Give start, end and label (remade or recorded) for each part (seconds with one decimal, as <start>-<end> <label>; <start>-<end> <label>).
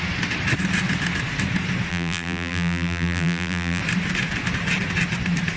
0.0-1.9 recorded; 1.9-3.8 remade; 3.8-5.6 recorded